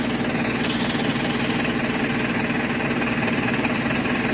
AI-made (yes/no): no